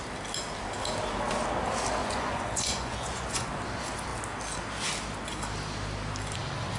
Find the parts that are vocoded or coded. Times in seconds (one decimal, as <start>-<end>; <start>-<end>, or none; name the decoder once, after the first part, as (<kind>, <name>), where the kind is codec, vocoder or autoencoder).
2.0-3.5 (vocoder, Vocos)